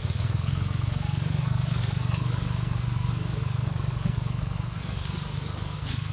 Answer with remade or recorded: remade